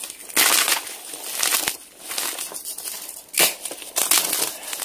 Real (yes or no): yes